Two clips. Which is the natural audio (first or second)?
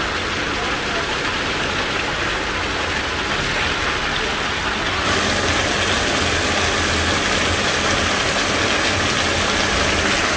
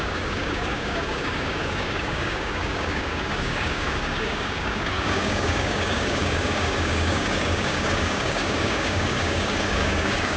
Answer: first